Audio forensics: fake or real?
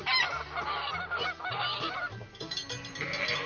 fake